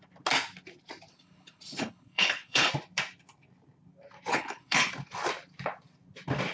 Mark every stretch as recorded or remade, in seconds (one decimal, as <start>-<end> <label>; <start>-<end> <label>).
0.0-1.1 recorded; 1.1-2.7 remade; 2.7-4.3 recorded; 4.3-4.9 remade; 4.9-6.5 recorded